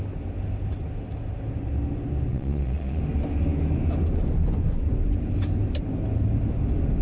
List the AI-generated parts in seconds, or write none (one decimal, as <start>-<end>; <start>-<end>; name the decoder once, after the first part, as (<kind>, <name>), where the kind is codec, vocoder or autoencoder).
2.3-3.0 (vocoder, Vocos)